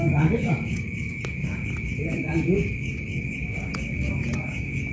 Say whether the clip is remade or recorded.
remade